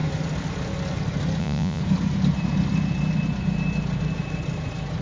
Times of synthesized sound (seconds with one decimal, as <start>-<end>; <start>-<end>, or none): 1.4-1.8